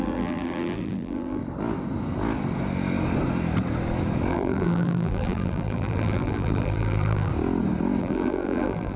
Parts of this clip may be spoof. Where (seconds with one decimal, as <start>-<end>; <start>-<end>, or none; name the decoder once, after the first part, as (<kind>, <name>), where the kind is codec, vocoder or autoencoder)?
0.0-1.4 (vocoder, BigVGAN v2); 4.3-7.3; 8.0-9.0

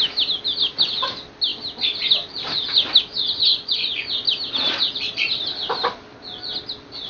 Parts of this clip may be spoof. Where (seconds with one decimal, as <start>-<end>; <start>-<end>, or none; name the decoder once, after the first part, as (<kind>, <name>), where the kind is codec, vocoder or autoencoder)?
3.5-4.1 (vocoder, Vocos)

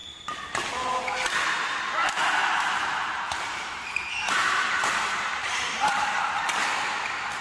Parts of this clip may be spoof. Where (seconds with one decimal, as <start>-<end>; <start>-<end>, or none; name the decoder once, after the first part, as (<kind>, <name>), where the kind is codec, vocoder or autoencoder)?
2.4-6.1 (vocoder, BigVGAN v2)

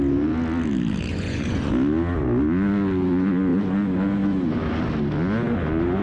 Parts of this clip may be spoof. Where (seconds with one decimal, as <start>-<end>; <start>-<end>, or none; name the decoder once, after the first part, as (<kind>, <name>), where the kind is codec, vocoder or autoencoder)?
1.1-1.7 (vocoder, Vocos)

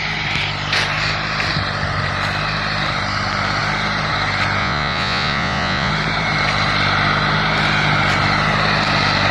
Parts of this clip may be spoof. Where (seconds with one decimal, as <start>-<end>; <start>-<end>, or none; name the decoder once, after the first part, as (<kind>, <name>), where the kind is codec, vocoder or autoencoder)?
4.6-5.9 (vocoder, Vocos)

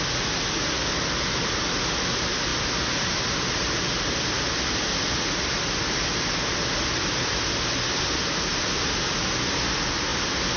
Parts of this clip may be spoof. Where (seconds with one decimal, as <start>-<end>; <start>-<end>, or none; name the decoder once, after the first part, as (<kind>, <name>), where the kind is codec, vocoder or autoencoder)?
none

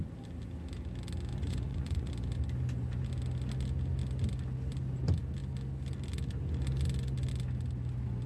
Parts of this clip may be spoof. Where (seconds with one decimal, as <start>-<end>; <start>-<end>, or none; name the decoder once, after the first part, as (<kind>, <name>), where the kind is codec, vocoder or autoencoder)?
1.3-2.1 (vocoder, Vocos)